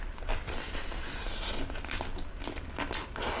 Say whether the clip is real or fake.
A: real